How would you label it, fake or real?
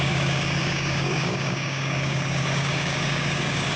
fake